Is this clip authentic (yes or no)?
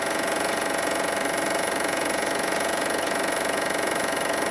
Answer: no